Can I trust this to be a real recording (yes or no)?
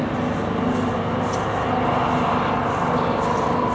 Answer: yes